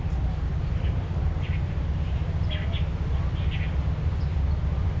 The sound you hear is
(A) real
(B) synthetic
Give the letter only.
A